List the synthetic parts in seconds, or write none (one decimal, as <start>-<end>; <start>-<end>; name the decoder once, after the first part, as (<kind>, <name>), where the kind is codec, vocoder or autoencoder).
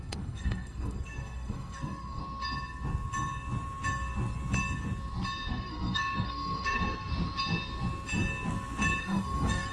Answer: 0.0-2.2 (codec, SNAC); 5.5-7.1; 9.0-9.7